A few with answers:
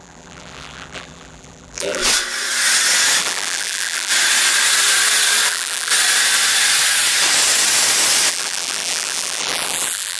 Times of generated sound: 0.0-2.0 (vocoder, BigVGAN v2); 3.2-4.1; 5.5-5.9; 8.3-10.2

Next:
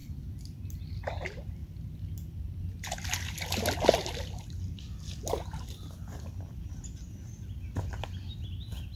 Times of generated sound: none

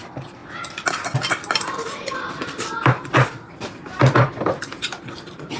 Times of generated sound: 0.0-0.4 (vocoder, BigVGAN v2); 0.9-5.6

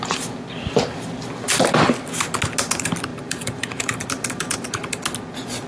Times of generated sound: 3.1-5.0 (vocoder, BigVGAN v2)